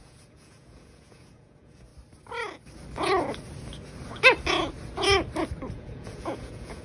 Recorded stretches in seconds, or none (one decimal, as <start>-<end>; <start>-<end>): 1.9-5.7